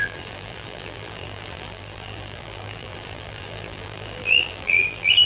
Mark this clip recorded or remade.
remade